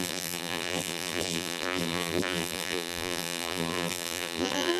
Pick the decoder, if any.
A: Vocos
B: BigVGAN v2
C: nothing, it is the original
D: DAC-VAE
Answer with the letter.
B